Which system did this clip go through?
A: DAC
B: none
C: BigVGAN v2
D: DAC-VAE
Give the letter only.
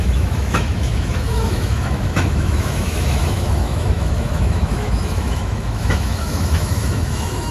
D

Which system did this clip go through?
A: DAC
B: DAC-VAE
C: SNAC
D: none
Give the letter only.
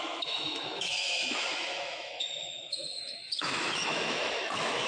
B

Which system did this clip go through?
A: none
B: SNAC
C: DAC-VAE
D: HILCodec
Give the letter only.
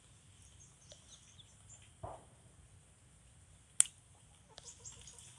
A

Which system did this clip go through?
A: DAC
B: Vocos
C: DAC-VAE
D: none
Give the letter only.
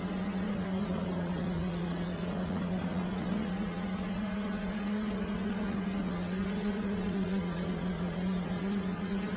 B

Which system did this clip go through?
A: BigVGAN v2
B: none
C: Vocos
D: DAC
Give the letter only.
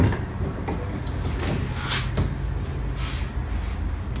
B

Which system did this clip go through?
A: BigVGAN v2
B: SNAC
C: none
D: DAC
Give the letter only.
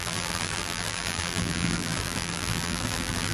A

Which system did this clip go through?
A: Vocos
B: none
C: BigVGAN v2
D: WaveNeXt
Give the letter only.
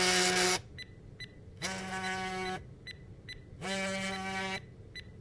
B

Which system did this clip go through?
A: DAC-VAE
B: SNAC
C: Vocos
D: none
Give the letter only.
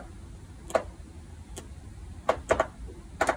D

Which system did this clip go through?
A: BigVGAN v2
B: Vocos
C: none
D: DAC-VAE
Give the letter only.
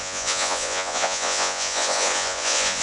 B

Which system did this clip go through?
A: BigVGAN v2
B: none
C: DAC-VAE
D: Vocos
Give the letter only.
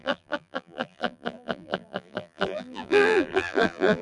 A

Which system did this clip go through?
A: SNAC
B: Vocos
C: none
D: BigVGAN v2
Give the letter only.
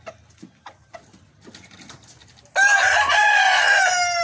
C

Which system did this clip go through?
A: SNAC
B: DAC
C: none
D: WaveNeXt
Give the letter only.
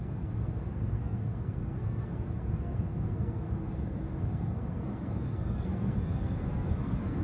A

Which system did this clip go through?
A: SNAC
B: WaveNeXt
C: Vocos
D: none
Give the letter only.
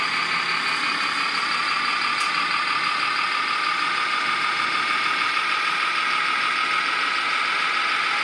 D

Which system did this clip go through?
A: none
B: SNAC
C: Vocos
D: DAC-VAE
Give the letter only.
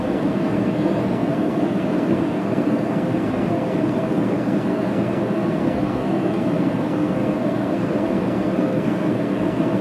B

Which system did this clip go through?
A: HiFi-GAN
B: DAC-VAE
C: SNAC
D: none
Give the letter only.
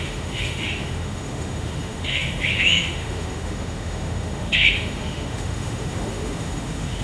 B